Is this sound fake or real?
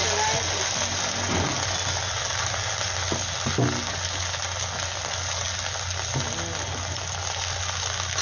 real